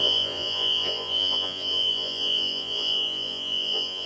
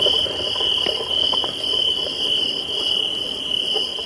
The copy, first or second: first